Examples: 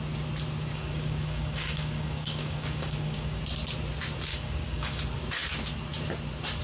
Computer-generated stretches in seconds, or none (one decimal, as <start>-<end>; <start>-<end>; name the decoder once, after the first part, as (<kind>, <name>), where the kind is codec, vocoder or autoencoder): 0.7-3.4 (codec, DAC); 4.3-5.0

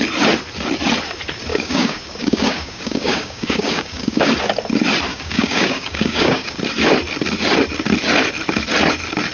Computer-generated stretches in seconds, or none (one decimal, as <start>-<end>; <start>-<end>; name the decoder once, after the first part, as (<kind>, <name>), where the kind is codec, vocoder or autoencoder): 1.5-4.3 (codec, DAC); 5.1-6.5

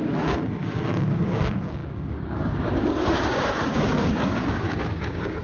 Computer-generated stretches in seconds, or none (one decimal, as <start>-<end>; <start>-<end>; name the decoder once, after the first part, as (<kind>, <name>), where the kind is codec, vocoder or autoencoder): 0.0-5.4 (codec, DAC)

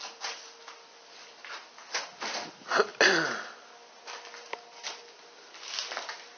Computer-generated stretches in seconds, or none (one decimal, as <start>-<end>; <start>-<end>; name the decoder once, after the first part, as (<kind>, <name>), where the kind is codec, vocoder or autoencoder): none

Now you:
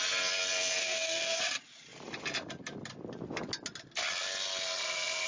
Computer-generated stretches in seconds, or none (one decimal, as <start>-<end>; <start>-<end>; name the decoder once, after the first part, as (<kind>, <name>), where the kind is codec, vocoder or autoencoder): 0.8-1.4 (codec, DAC)

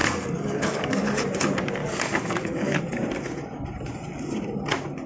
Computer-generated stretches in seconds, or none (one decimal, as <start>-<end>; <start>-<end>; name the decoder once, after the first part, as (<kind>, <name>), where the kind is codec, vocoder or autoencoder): 0.0-1.1 (codec, DAC); 1.8-2.8

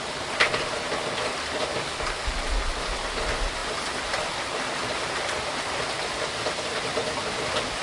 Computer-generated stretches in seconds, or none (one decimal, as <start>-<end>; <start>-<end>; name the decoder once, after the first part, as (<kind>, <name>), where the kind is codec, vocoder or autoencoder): 1.7-2.3 (codec, DAC)